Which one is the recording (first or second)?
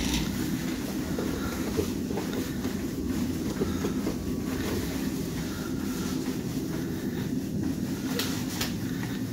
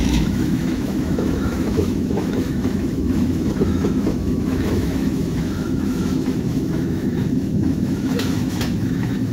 first